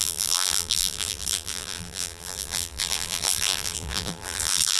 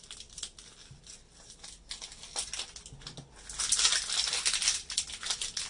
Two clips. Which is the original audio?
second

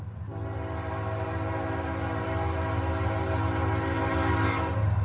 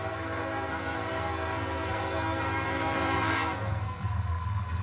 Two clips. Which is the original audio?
first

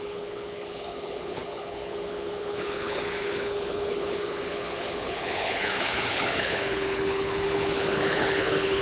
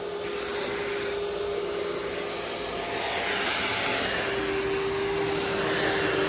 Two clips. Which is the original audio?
second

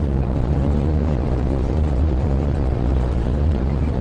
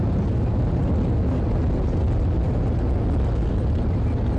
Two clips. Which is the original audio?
second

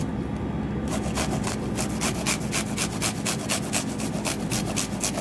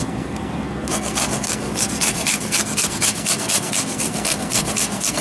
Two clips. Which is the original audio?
first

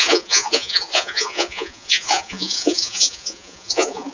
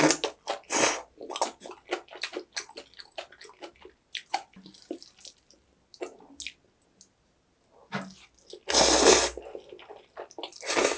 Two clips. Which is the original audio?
second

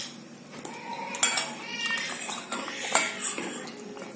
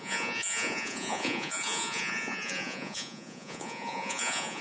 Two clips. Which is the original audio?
first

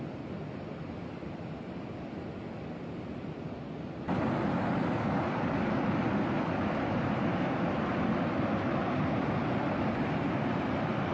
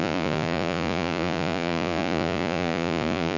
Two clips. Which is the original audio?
first